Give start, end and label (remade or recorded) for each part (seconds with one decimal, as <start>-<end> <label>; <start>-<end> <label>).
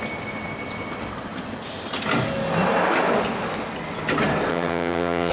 0.0-4.5 recorded; 4.5-5.3 remade